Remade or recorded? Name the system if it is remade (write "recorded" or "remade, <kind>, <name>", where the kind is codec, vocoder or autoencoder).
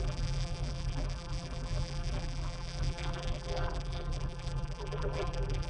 remade, vocoder, BigVGAN v2